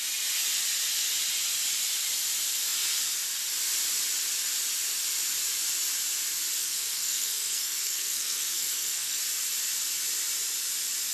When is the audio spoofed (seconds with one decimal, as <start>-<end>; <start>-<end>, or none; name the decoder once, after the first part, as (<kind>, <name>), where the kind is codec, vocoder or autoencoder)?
6.6-9.2 (codec, SNAC)